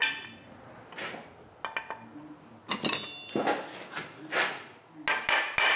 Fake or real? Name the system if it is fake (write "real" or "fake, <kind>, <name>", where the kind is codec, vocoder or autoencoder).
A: real